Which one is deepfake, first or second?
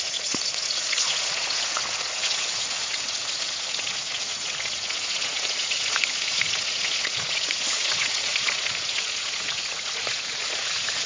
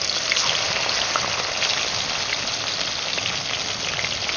first